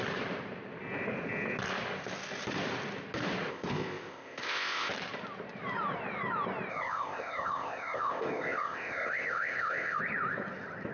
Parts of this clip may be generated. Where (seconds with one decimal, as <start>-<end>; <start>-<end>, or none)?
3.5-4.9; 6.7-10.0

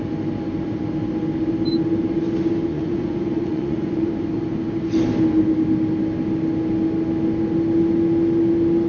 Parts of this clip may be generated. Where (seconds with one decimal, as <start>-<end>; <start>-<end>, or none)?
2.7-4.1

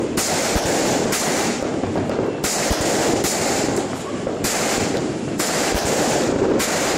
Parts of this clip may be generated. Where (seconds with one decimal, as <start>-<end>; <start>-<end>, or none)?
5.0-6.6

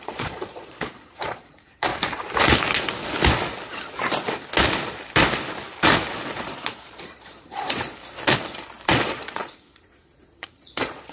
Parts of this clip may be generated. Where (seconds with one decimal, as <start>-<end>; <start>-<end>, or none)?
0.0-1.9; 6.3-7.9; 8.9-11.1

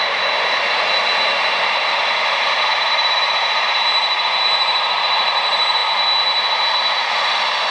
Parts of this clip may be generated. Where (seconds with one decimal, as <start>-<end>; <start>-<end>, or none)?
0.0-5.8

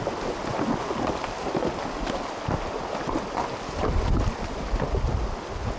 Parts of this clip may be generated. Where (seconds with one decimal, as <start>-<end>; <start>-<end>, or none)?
none